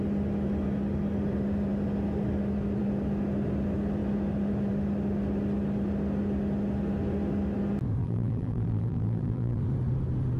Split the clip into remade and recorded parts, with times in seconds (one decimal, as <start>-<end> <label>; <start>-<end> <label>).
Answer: 0.0-8.0 recorded; 8.0-9.6 remade; 9.6-10.4 recorded